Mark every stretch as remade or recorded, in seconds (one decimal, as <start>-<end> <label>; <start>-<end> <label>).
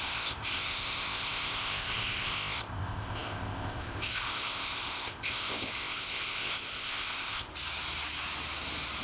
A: 0.0-7.5 remade; 7.5-9.0 recorded